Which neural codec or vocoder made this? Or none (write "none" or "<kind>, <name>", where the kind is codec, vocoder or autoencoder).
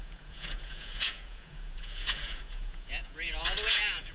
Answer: vocoder, Vocos